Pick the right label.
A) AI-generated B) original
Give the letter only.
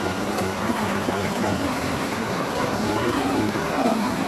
A